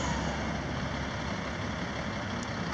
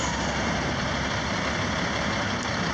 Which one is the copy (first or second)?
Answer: second